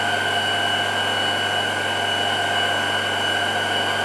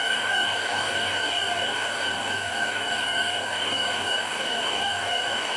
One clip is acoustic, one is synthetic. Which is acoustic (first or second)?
first